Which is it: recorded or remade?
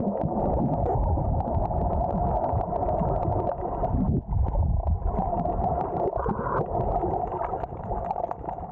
recorded